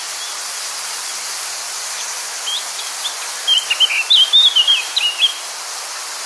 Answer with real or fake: real